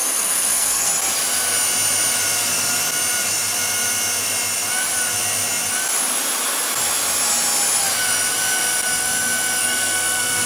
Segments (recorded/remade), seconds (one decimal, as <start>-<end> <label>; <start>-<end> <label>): 0.0-0.9 remade; 0.9-9.6 recorded; 9.6-10.5 remade